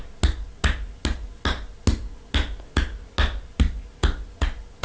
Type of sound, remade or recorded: recorded